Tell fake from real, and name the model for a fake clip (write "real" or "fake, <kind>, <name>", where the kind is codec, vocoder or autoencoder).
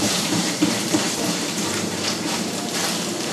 fake, vocoder, BigVGAN v2